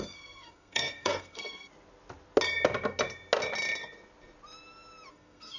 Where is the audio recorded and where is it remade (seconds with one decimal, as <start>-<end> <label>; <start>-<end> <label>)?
0.0-1.7 remade; 1.7-5.1 recorded; 5.1-5.6 remade

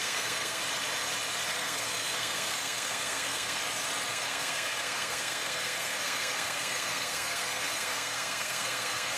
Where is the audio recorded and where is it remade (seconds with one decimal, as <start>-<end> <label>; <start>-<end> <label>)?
0.0-0.6 remade; 0.6-1.5 recorded; 1.5-3.6 remade; 3.6-4.1 recorded; 4.1-9.2 remade

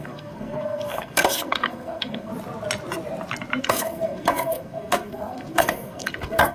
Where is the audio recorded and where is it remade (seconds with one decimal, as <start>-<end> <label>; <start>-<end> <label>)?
0.0-2.3 remade; 2.3-3.6 recorded; 3.6-6.5 remade

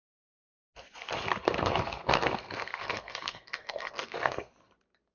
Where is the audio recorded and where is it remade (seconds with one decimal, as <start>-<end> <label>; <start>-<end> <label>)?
0.0-1.4 recorded; 1.4-4.5 remade; 4.5-5.1 recorded

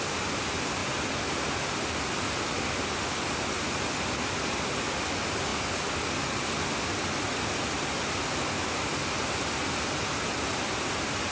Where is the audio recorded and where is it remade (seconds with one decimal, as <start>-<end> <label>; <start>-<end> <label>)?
0.0-11.3 recorded

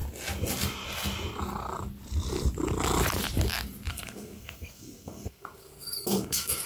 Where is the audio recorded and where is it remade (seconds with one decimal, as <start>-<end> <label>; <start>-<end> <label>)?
0.0-3.9 recorded; 3.9-6.7 remade

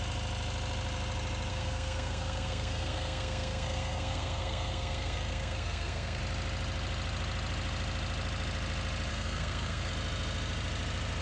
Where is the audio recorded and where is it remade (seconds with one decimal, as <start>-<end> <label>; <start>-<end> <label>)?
0.0-1.5 recorded; 1.5-6.2 remade; 6.2-9.1 recorded; 9.1-9.9 remade; 9.9-11.2 recorded